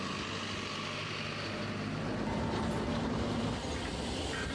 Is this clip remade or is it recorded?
recorded